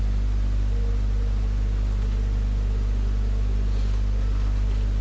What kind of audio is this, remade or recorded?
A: recorded